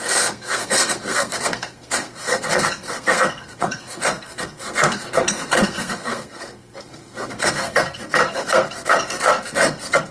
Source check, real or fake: fake